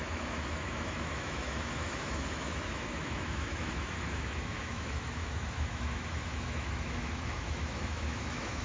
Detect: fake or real fake